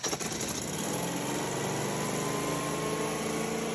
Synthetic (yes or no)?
no